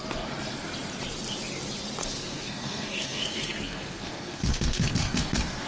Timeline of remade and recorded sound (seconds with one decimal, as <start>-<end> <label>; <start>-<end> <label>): 0.0-2.0 recorded; 2.0-5.7 remade